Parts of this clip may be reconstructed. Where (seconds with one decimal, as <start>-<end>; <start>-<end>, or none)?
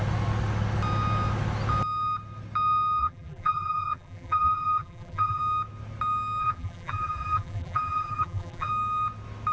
3.0-5.4; 6.4-8.7